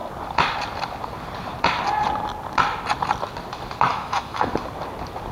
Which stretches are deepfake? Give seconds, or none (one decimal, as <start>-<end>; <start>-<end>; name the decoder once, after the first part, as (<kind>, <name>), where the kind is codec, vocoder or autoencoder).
3.9-4.5 (autoencoder, DAC-VAE)